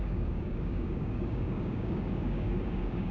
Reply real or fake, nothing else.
fake